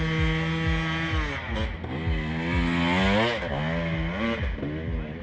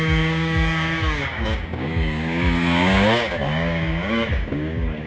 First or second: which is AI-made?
second